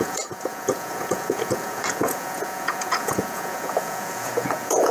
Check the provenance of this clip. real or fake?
fake